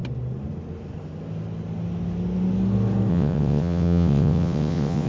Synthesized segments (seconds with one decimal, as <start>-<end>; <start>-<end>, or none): 3.1-5.1